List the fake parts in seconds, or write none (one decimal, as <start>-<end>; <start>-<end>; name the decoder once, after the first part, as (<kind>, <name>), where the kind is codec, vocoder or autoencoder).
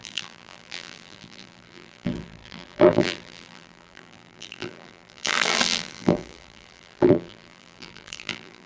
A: 0.0-8.7 (vocoder, BigVGAN v2)